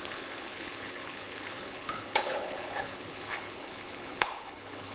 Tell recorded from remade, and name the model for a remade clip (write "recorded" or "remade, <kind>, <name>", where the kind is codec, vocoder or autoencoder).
remade, codec, HILCodec